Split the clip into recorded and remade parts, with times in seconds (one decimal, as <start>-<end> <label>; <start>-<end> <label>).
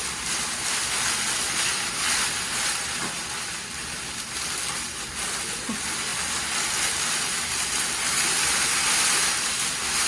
0.0-3.8 remade; 3.8-5.5 recorded; 5.5-6.1 remade; 6.1-6.7 recorded; 6.7-9.2 remade; 9.2-10.1 recorded